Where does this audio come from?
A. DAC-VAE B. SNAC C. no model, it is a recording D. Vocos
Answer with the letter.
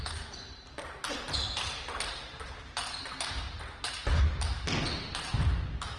C